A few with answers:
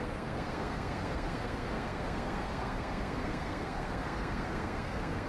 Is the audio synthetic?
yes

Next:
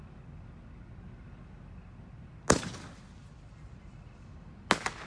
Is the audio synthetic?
no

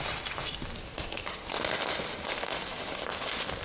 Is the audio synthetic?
no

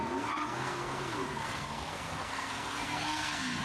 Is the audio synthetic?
yes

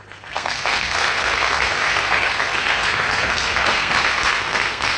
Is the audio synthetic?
yes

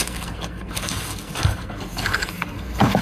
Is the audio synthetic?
yes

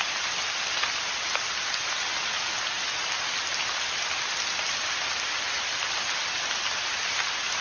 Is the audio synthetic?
no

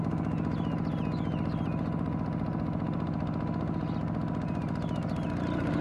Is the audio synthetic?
no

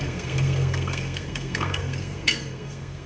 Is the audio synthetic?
yes